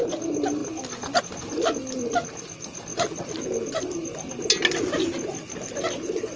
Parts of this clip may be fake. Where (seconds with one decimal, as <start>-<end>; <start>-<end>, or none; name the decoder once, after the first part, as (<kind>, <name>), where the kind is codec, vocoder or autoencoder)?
2.9-4.3 (vocoder, BigVGAN v2)